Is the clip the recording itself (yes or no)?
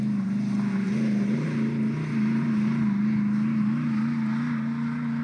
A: yes